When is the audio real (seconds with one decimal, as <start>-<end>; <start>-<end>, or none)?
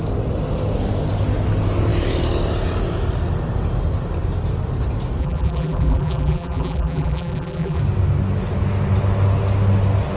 0.0-5.2; 7.8-10.2